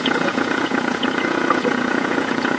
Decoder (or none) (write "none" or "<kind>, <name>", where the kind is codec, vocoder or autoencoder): vocoder, Vocos